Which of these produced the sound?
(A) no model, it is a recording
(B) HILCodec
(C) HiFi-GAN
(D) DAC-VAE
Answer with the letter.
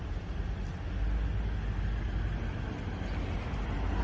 A